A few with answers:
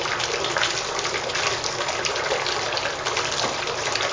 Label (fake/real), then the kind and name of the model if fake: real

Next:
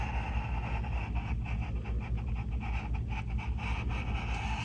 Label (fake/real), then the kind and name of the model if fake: real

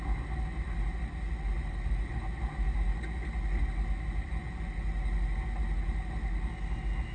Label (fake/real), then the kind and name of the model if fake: real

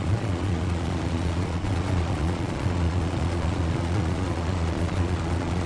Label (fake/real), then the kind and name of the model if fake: fake, vocoder, Vocos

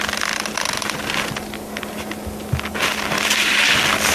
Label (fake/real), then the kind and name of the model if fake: real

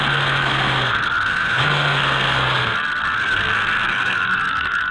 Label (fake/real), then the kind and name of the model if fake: fake, codec, SNAC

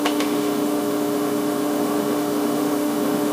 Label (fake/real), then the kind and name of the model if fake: fake, autoencoder, DAC-VAE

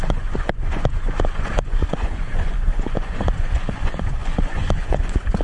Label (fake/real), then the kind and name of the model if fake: fake, vocoder, Vocos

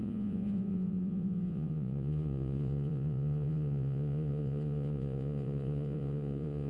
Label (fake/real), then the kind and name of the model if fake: fake, vocoder, Vocos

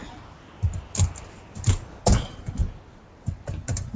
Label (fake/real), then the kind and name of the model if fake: real